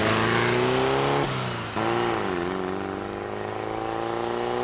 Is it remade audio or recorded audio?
recorded